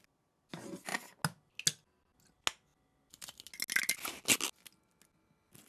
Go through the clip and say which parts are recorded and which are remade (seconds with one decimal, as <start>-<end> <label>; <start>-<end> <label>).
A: 0.0-5.7 recorded